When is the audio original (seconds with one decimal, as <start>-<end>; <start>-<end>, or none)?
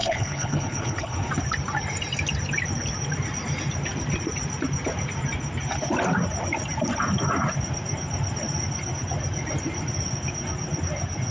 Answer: 1.3-11.3